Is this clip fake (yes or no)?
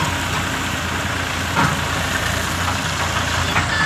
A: no